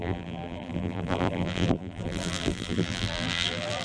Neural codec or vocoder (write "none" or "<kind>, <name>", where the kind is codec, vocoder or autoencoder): vocoder, BigVGAN v2